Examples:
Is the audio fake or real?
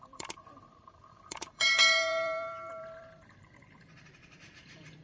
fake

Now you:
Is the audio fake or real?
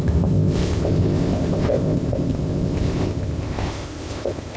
fake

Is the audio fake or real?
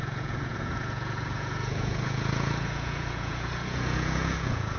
fake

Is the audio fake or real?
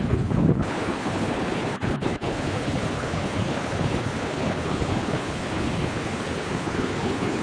fake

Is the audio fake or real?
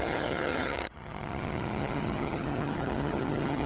fake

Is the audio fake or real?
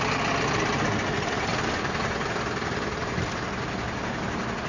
real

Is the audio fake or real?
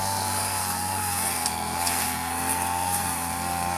fake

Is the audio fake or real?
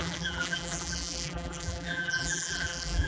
fake